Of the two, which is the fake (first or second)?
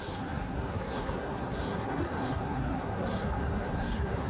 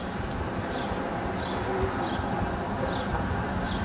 first